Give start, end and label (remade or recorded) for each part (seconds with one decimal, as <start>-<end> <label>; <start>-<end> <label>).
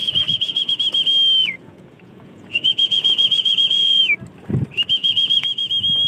0.0-0.7 remade; 0.7-1.4 recorded; 1.4-4.0 remade; 4.0-5.0 recorded; 5.0-5.6 remade; 5.6-6.1 recorded